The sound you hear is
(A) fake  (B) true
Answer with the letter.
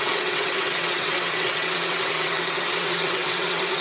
A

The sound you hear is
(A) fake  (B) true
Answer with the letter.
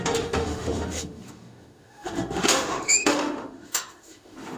A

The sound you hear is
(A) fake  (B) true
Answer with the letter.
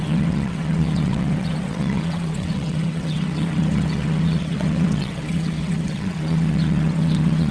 A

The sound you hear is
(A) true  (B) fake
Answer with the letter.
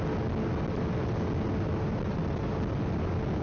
A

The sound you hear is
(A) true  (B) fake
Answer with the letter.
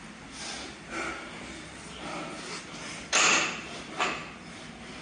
A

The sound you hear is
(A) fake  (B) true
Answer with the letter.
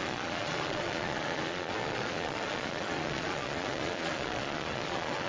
A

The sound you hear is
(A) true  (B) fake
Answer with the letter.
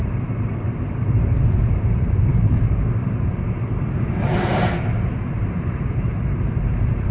B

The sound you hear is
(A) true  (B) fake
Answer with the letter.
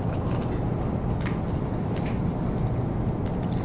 A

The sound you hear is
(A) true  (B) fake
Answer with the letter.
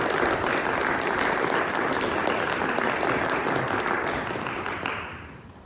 A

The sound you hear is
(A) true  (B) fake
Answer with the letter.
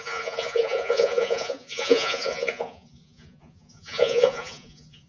B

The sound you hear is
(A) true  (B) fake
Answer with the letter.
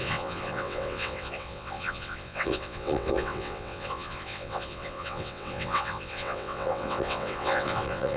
B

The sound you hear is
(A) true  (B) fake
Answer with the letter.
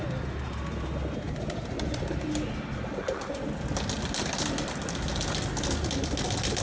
A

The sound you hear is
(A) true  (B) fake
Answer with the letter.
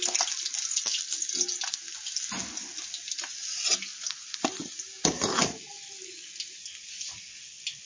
A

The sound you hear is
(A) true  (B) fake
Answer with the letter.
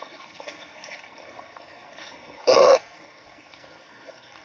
B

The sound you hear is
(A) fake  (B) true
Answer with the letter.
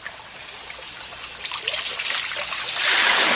B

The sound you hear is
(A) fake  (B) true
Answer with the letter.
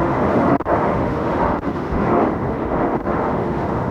A